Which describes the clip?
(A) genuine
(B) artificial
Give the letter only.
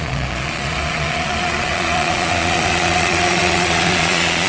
B